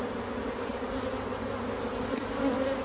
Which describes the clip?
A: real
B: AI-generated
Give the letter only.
A